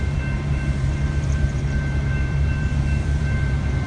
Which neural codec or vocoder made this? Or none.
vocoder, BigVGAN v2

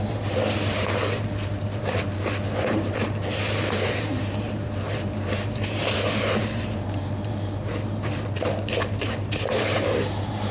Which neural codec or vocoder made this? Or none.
vocoder, BigVGAN v2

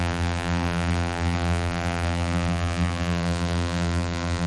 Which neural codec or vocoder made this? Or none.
vocoder, BigVGAN v2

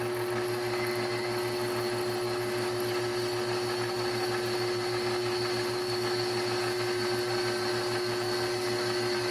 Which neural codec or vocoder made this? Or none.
none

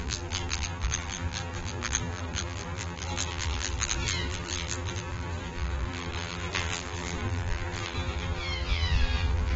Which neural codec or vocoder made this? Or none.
vocoder, BigVGAN v2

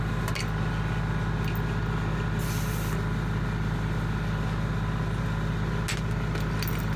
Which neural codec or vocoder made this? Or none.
none